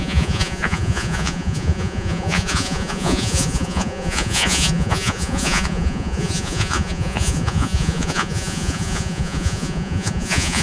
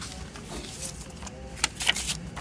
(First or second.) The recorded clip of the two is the second